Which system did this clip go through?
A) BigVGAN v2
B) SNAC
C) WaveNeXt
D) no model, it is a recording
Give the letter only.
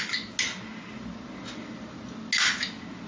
D